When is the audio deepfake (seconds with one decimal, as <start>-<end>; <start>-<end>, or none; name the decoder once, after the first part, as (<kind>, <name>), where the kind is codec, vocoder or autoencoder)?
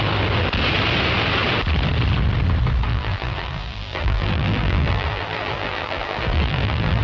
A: 2.9-7.0 (vocoder, BigVGAN v2)